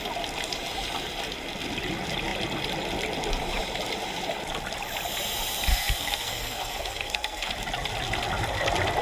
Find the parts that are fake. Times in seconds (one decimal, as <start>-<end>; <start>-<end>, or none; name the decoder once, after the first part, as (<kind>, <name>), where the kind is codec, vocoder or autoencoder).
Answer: 5.7-7.5 (codec, SNAC)